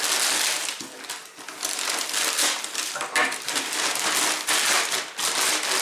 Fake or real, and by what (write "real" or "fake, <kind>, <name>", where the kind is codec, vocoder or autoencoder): real